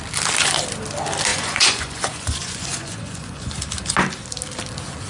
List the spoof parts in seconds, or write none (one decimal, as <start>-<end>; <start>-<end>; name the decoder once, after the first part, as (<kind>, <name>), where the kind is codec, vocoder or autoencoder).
1.3-3.5 (vocoder, Vocos)